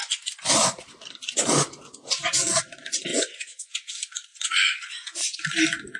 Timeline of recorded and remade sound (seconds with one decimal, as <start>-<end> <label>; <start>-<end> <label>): 0.0-3.1 recorded; 3.1-3.9 remade; 3.9-4.3 recorded; 4.3-5.4 remade; 5.4-6.0 recorded

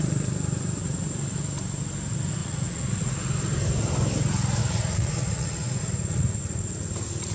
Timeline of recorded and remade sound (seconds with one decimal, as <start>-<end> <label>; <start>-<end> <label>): 0.0-2.4 recorded; 2.4-3.1 remade; 3.1-4.6 recorded; 4.6-5.8 remade; 5.8-7.3 recorded

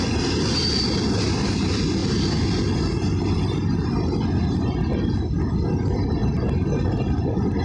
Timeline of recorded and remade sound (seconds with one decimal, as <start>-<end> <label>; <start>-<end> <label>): 0.0-6.2 recorded; 6.2-7.6 remade

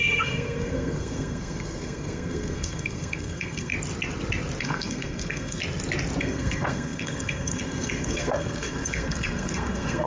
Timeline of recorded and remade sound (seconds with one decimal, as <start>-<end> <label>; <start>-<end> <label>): 0.0-3.7 remade; 3.7-4.6 recorded; 4.6-5.6 remade; 5.6-6.2 recorded; 6.2-10.1 remade

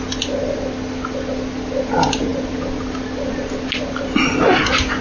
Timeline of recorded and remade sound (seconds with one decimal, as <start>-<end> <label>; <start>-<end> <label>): 0.0-5.0 recorded

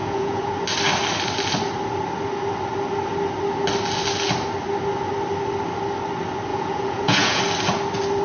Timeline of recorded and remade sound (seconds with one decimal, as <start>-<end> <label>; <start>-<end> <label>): 0.0-0.5 remade; 0.5-6.5 recorded; 6.5-7.4 remade; 7.4-8.2 recorded